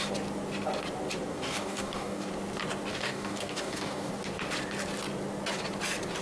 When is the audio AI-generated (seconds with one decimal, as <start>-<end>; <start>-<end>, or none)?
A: 1.3-2.3; 2.9-4.1